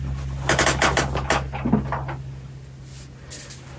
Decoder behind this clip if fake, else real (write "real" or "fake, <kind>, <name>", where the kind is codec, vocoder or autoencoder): real